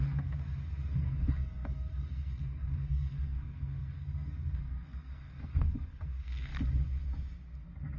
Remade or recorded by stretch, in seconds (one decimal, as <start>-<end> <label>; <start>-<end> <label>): 0.0-6.5 remade; 6.5-8.0 recorded